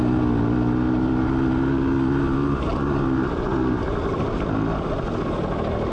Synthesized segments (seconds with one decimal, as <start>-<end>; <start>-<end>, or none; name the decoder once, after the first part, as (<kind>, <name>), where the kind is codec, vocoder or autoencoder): none